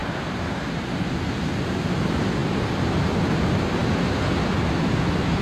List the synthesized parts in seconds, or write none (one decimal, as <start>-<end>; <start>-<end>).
none